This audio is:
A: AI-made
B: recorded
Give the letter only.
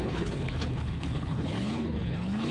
A